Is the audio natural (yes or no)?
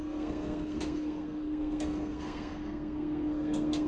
no